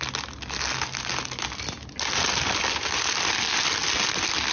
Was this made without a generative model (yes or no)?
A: yes